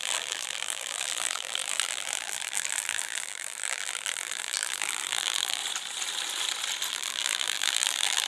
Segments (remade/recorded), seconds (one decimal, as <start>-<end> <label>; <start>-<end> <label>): 0.0-5.6 remade; 5.6-6.9 recorded; 6.9-8.3 remade